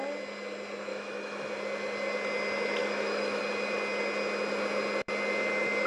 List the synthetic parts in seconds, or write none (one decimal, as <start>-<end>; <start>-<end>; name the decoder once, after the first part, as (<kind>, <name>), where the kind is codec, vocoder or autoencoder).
0.9-1.5 (autoencoder, DAC-VAE); 2.8-3.4